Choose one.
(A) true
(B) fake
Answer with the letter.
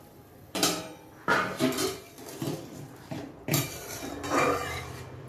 B